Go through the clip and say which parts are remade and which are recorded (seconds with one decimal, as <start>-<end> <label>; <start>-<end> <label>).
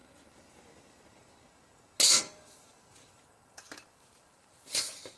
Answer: 0.0-4.3 recorded; 4.3-4.8 remade; 4.8-5.2 recorded